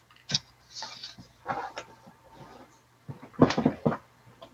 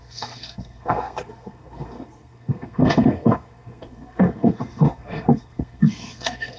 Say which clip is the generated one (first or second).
second